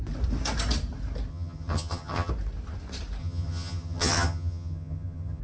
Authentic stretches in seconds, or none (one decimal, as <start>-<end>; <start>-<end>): 0.0-1.3; 2.3-3.2